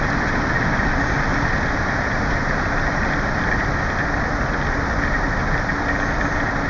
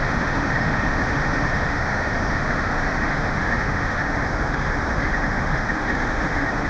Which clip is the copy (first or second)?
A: second